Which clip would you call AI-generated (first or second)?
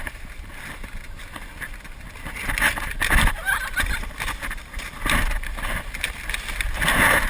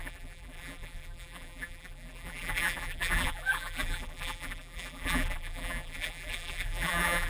second